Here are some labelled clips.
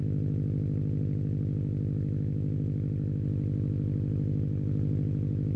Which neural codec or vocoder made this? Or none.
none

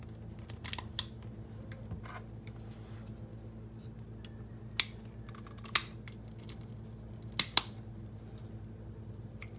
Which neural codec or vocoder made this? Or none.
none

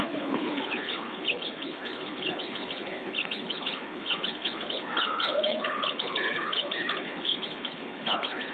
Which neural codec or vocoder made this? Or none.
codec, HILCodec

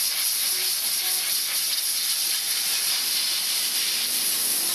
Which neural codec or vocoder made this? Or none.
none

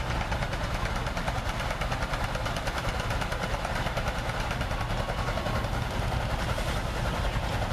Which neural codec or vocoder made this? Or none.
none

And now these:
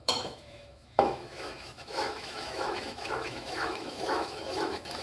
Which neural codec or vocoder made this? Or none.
autoencoder, DAC-VAE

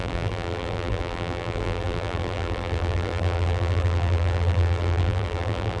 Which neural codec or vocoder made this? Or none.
vocoder, BigVGAN v2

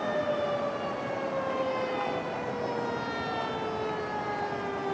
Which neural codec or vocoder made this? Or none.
none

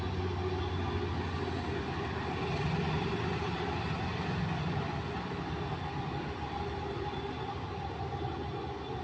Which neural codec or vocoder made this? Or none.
none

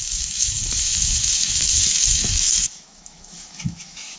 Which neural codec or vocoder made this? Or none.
autoencoder, DAC-VAE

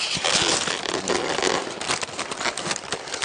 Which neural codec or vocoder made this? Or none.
none